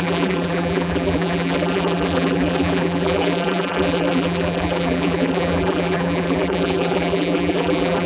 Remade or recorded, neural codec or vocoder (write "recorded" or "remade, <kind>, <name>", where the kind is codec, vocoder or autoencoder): remade, vocoder, BigVGAN v2